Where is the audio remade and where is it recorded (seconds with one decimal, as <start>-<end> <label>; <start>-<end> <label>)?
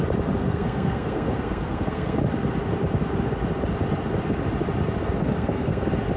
0.0-0.4 recorded; 0.4-2.2 remade; 2.2-5.2 recorded; 5.2-5.8 remade; 5.8-6.2 recorded